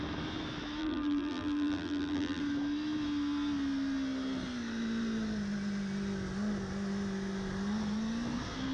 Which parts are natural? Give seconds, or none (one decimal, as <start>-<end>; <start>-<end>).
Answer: 0.0-0.8; 2.4-8.7